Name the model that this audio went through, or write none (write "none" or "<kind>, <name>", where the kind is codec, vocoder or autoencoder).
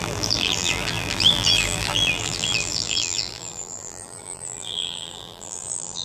vocoder, BigVGAN v2